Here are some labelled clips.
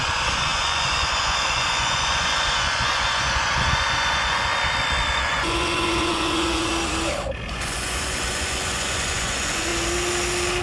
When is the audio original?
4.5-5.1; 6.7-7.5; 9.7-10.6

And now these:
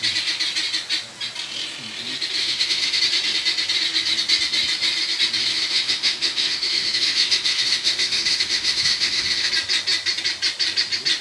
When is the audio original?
0.0-2.4; 3.0-5.5; 9.5-11.2

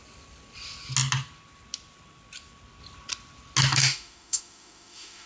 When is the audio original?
0.0-3.8

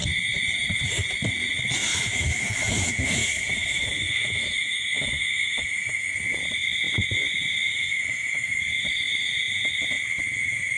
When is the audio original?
0.0-1.9; 6.1-7.7; 8.6-10.8

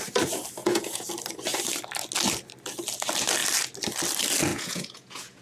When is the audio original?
0.0-0.6; 1.1-4.5